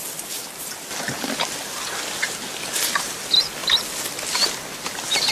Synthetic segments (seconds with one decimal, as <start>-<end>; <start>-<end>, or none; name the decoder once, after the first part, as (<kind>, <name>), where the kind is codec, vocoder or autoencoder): none